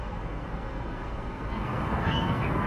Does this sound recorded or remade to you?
remade